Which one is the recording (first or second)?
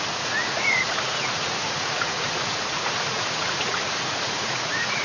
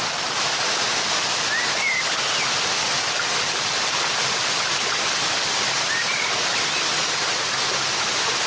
second